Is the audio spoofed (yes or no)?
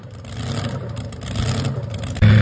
no